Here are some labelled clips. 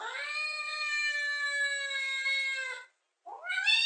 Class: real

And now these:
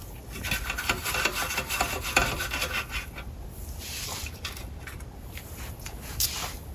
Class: real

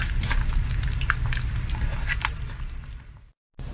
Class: real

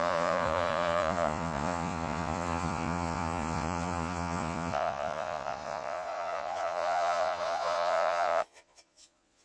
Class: fake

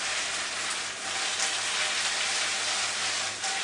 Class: real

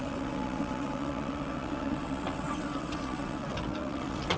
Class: fake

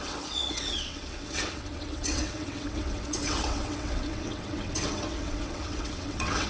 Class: fake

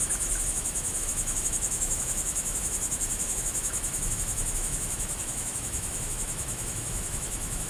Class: fake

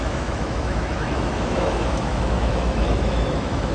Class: fake